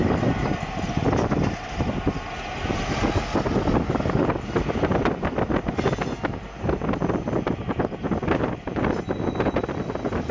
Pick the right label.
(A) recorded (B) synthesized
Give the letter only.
A